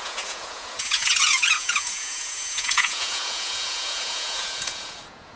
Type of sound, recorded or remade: remade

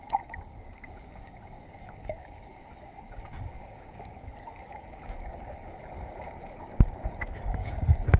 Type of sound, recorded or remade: remade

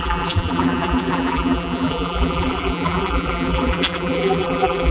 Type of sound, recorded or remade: remade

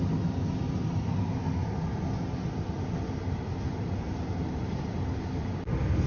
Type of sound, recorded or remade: recorded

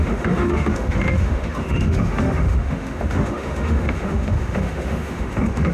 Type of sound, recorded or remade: remade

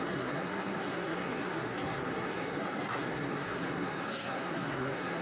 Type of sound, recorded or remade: remade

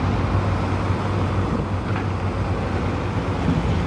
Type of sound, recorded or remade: recorded